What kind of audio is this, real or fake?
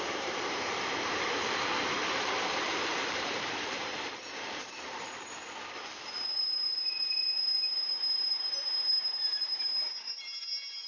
fake